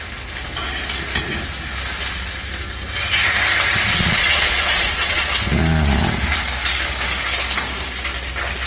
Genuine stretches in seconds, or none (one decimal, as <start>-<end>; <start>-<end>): 0.0-3.9; 5.3-8.7